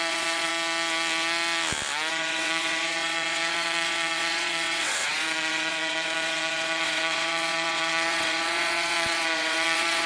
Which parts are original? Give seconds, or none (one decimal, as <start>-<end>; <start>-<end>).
0.5-2.1